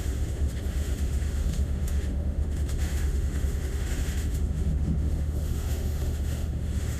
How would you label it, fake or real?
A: fake